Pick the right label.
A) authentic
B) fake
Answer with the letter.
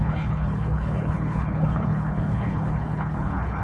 B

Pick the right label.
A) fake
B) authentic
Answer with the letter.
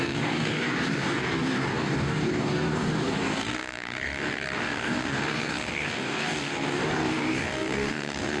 A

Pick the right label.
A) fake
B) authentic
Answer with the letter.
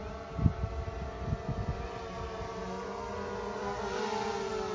B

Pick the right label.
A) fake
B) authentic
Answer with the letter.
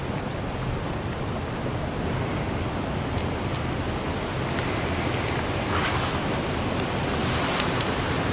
B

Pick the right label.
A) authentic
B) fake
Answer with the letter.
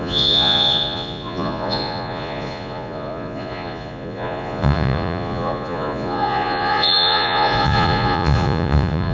B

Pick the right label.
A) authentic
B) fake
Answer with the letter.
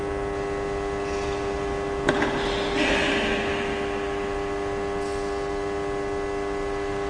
A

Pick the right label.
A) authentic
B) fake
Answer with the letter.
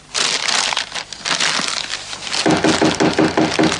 A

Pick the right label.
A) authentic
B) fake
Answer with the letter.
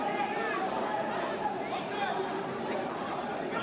B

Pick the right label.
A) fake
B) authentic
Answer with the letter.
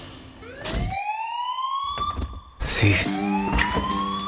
B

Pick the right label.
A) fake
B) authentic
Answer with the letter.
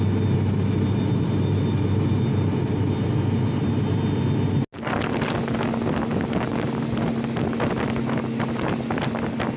B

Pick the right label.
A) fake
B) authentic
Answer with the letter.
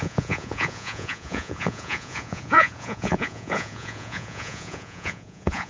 A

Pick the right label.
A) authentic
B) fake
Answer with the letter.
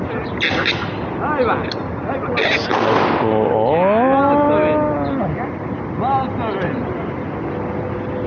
A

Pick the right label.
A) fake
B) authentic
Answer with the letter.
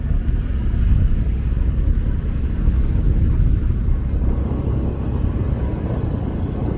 B